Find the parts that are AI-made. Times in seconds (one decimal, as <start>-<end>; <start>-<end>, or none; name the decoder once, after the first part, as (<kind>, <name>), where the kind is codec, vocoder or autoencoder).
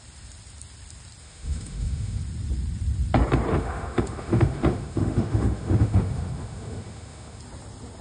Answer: 1.2-2.2 (autoencoder, DAC-VAE); 3.5-7.4